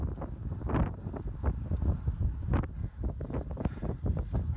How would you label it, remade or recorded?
recorded